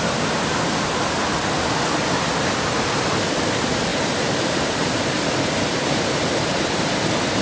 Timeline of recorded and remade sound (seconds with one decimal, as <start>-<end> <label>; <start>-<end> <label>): 0.0-3.9 recorded; 3.9-5.0 remade; 5.0-7.4 recorded